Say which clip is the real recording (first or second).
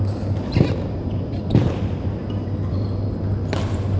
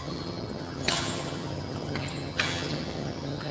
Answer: first